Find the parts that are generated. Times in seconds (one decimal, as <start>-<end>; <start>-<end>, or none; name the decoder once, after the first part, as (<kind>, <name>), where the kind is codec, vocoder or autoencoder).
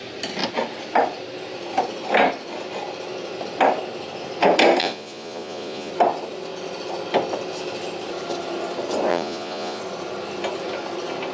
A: 4.8-5.9 (vocoder, Vocos); 9.1-9.8